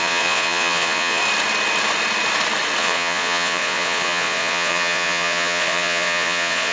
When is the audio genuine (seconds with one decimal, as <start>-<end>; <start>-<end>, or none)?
1.2-2.8